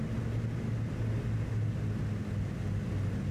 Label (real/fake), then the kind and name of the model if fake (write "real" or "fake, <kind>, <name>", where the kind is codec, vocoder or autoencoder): real